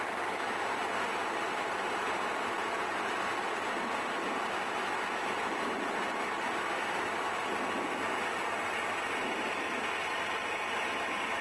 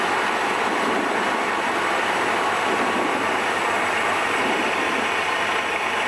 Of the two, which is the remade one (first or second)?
second